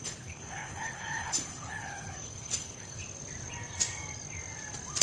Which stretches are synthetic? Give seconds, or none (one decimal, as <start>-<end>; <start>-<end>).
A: 0.0-3.0